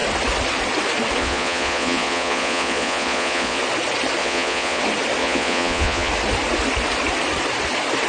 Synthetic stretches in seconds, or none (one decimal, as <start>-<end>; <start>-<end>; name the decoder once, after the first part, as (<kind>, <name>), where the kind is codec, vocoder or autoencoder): 1.2-3.6 (vocoder, Vocos); 4.2-4.8; 5.2-6.1